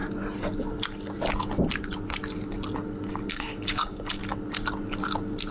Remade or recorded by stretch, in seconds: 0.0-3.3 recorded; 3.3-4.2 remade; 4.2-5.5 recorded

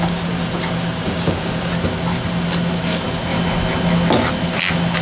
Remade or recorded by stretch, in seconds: 0.0-1.0 recorded; 1.0-1.7 remade; 1.7-5.0 recorded

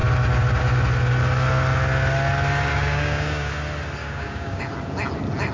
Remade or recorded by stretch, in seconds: 0.0-2.7 recorded; 2.7-3.5 remade; 3.5-4.0 recorded; 4.0-4.6 remade; 4.6-5.5 recorded

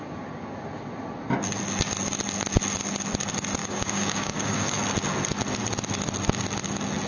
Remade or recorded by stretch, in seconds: 0.0-3.6 recorded; 3.6-4.8 remade; 4.8-7.1 recorded

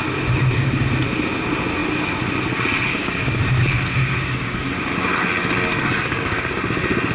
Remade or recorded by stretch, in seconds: 0.0-2.9 recorded; 2.9-3.4 remade; 3.4-4.0 recorded; 4.0-4.7 remade; 4.7-5.7 recorded; 5.7-6.5 remade; 6.5-7.1 recorded

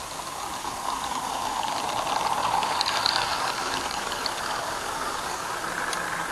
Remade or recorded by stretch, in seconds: 0.0-0.6 recorded; 0.6-1.8 remade; 1.8-2.4 recorded; 2.4-5.5 remade; 5.5-6.3 recorded